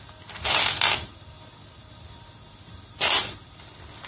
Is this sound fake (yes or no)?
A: no